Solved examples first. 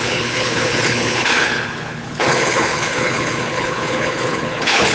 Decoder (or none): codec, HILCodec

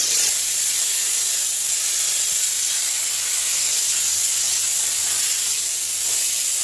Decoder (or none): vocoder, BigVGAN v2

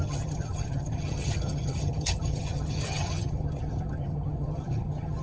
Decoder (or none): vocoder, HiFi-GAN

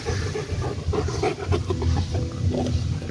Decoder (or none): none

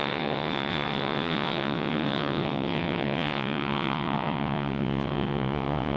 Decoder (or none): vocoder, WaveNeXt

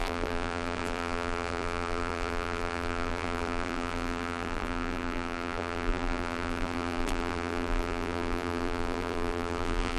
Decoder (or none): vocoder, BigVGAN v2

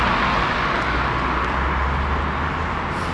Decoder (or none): none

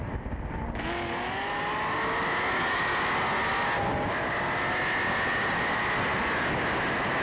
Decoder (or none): none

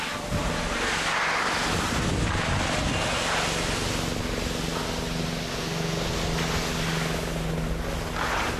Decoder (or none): none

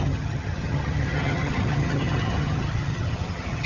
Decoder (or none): vocoder, HiFi-GAN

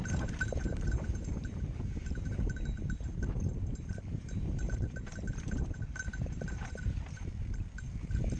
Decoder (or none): vocoder, BigVGAN v2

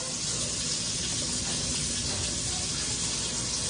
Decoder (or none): none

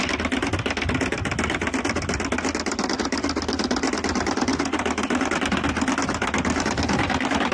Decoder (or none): none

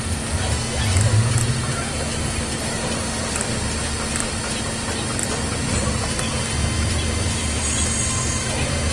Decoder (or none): none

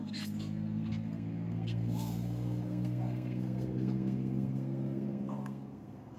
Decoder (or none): codec, SNAC